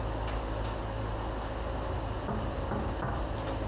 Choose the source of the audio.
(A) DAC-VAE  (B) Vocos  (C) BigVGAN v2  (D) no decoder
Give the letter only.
D